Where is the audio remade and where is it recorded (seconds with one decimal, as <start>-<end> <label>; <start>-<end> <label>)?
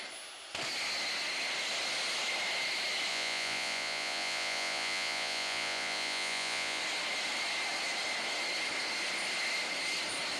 0.0-3.1 recorded; 3.1-6.8 remade; 6.8-10.4 recorded